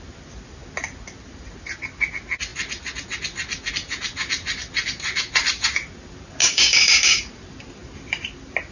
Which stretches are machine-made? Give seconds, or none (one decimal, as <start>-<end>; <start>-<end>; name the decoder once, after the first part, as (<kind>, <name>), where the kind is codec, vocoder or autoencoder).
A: 6.4-7.2 (codec, DAC)